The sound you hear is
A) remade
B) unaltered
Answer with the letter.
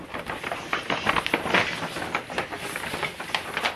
B